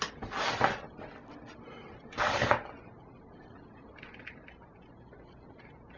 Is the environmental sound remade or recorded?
recorded